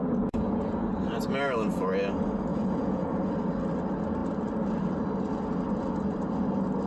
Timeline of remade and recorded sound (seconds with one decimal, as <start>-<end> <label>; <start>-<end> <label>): 0.0-1.0 remade; 1.0-2.5 recorded; 2.5-3.2 remade; 3.2-6.9 recorded